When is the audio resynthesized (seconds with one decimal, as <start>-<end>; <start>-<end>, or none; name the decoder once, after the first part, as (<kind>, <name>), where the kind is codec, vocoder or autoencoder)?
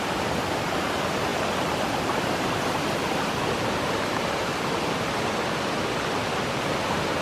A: 1.3-5.3 (vocoder, BigVGAN v2)